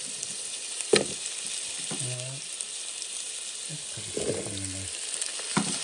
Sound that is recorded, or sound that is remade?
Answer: recorded